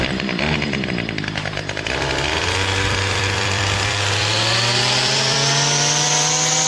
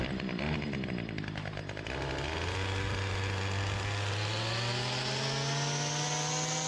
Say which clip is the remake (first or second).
first